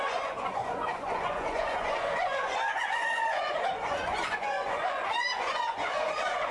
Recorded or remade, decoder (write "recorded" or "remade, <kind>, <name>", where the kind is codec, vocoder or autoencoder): remade, vocoder, Vocos